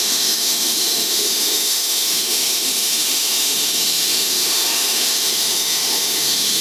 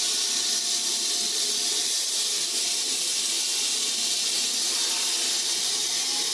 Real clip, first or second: second